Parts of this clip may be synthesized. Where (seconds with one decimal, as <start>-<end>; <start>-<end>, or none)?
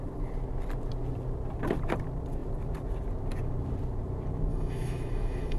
4.5-5.6